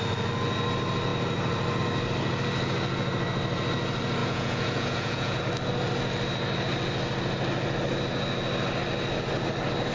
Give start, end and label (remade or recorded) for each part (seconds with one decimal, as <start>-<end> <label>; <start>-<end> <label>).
0.0-4.2 recorded; 4.2-5.4 remade; 5.4-9.9 recorded